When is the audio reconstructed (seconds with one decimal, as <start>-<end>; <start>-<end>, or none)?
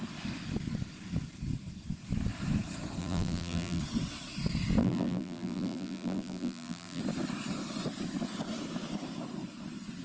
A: 3.0-3.8; 4.8-7.0